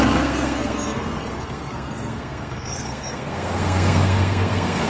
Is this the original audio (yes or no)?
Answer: no